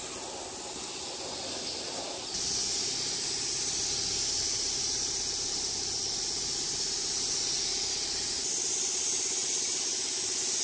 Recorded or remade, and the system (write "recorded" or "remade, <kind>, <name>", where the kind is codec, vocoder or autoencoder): recorded